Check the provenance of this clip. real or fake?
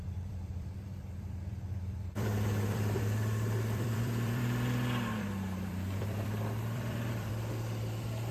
fake